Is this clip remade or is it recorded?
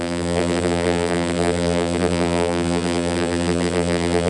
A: remade